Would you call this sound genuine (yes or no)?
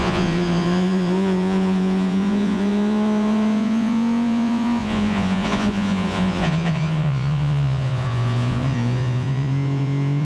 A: no